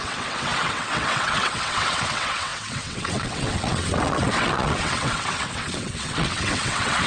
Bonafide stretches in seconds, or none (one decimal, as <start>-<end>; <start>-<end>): none